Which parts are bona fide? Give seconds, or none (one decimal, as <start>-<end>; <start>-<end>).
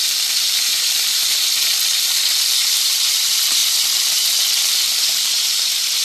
3.6-5.0